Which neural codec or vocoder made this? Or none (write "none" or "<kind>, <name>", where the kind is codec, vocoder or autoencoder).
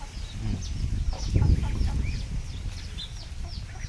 none